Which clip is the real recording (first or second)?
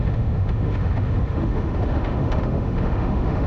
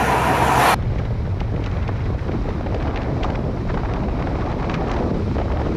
second